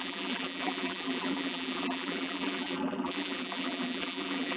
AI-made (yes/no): yes